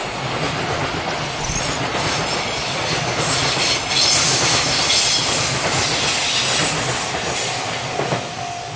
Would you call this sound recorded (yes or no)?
yes